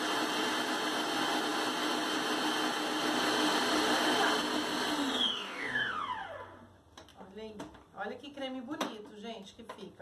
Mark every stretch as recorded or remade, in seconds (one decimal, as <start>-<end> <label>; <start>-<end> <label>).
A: 0.0-5.3 recorded; 5.3-5.9 remade; 5.9-10.0 recorded